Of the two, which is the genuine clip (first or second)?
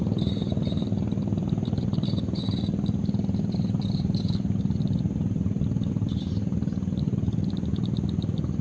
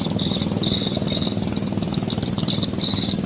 second